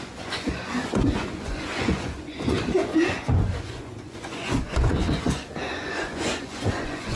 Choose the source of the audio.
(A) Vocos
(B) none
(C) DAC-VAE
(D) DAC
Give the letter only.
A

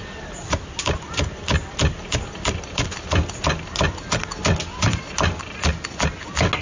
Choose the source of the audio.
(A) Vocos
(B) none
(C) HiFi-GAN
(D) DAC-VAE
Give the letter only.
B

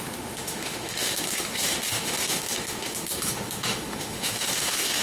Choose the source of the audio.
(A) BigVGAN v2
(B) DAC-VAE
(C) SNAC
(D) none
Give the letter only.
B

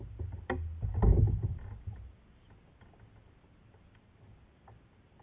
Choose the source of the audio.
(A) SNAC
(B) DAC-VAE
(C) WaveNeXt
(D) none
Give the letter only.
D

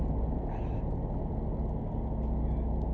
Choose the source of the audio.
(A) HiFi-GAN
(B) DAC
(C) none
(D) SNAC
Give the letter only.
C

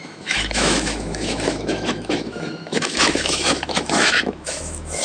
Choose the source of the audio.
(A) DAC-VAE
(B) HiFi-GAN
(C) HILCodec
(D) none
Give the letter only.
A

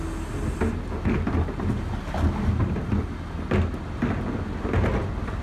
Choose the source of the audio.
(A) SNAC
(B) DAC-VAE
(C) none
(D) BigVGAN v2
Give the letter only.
C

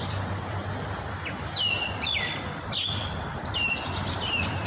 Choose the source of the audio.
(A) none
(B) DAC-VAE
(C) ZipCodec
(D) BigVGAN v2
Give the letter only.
D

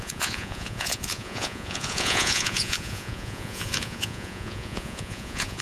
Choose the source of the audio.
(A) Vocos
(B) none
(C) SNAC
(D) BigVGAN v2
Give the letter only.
A